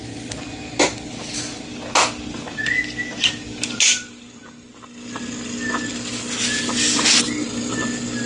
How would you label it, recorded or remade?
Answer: recorded